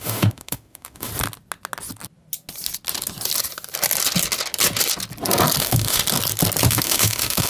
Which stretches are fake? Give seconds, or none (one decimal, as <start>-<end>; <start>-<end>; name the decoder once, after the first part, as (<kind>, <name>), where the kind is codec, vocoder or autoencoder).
0.0-1.1 (autoencoder, DAC-VAE); 5.6-6.0; 6.7-7.5